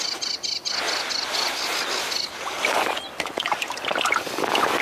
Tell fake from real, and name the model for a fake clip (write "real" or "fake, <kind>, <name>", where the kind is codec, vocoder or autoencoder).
real